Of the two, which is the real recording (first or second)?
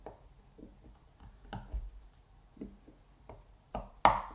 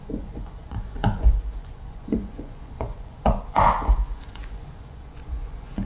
first